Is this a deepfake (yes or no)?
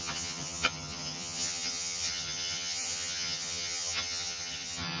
yes